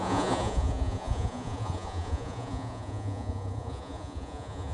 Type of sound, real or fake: fake